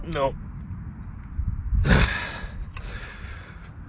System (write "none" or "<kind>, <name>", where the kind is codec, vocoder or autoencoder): none